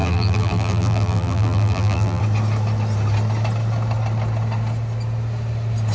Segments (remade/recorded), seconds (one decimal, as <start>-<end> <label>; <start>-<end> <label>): 0.0-2.2 remade; 2.2-5.9 recorded